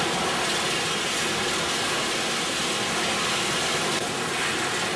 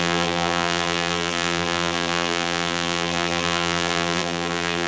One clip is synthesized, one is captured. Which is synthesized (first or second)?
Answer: second